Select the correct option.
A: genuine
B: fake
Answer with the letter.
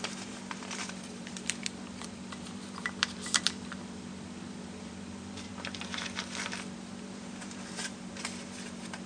B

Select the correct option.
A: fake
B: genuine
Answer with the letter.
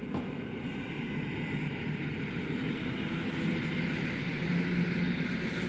B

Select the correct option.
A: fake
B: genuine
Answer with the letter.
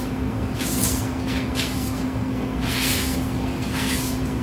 A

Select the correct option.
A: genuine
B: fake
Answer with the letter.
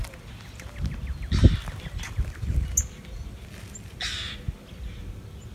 A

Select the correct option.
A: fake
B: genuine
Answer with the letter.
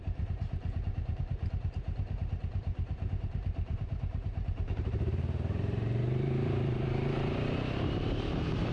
A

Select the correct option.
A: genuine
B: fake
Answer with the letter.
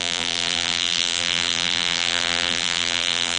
B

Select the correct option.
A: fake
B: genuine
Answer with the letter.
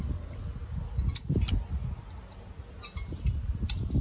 B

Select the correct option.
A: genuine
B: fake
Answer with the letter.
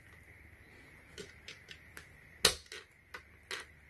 A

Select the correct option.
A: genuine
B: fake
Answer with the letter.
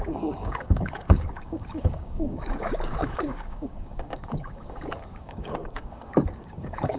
B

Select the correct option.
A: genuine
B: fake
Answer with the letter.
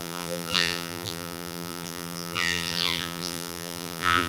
B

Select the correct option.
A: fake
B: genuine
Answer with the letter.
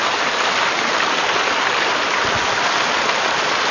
B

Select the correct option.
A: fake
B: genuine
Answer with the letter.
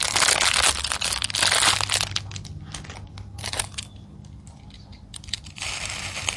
B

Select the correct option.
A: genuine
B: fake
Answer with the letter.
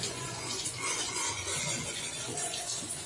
B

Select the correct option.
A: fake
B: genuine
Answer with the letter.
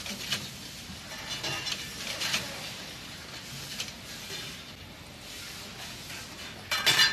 B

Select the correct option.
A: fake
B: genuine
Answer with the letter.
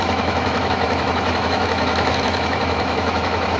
A